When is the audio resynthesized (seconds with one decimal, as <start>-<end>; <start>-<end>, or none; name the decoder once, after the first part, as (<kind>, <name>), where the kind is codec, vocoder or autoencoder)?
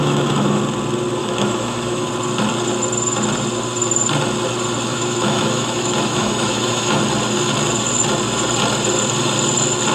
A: 0.0-0.6 (autoencoder, DAC-VAE); 1.2-2.1; 4.9-7.0